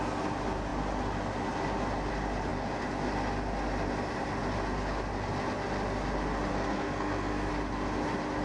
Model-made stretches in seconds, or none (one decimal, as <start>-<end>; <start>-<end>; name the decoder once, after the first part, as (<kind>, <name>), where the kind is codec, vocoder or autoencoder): 6.5-7.5 (codec, SNAC)